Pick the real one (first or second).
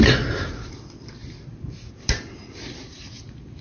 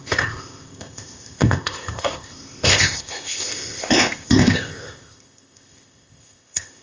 first